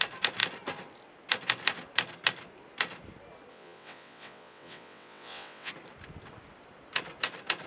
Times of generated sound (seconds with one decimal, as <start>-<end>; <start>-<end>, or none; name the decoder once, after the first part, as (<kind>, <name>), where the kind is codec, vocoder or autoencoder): 3.5-5.7 (vocoder, WaveNeXt)